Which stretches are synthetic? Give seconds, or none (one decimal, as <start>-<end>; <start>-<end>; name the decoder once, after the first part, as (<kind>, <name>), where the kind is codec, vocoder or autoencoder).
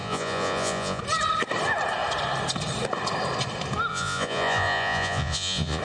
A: 0.0-1.0 (vocoder, Vocos); 3.9-5.8